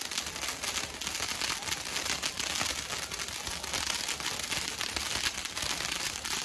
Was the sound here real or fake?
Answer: real